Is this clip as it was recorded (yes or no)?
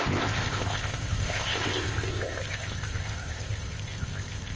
no